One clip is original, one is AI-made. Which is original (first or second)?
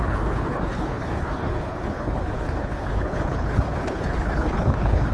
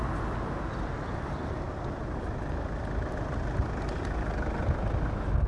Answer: second